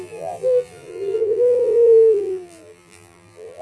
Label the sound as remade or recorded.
remade